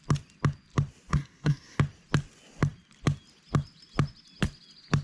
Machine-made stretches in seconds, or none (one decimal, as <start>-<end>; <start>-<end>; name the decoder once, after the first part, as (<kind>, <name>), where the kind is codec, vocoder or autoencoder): 1.1-1.8 (codec, SNAC)